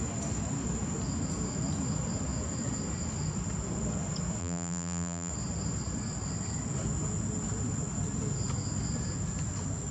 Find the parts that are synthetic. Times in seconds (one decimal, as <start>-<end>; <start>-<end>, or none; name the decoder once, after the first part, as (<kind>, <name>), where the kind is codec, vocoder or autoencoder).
4.4-5.3 (vocoder, BigVGAN v2)